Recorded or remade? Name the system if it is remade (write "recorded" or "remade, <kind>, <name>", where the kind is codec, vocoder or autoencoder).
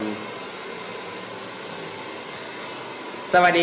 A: recorded